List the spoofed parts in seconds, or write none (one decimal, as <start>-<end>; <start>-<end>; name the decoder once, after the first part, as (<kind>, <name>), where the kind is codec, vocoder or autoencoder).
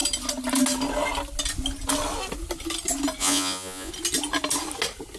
3.2-3.9 (vocoder, Vocos)